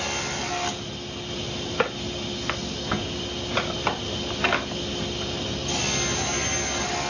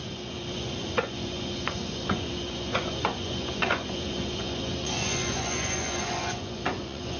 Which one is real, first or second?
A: first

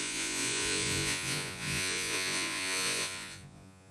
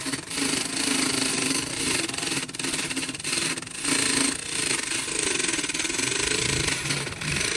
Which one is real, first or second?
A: second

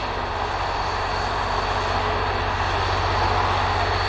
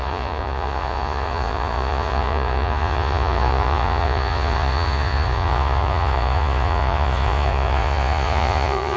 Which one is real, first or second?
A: first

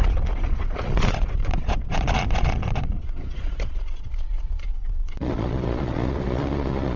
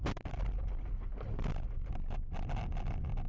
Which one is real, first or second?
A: second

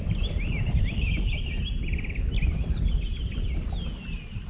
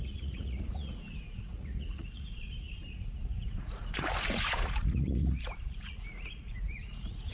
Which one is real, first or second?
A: first